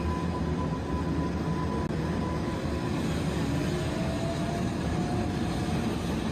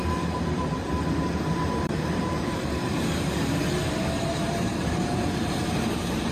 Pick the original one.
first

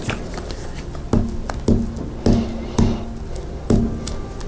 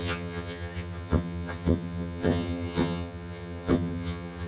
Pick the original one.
first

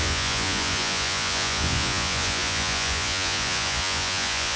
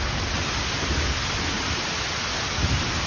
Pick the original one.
second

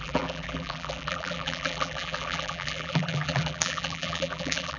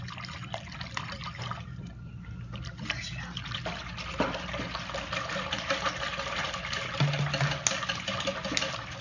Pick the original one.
second